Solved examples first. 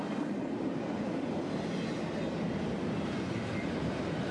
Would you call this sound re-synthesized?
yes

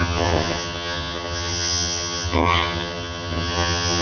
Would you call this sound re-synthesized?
yes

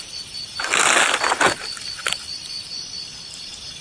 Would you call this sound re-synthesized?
no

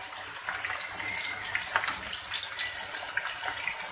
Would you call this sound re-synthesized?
no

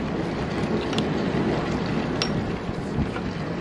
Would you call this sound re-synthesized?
no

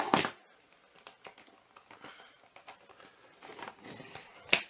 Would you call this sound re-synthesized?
no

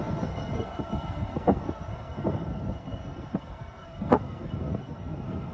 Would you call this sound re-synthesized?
yes